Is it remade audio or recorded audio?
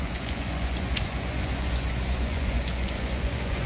remade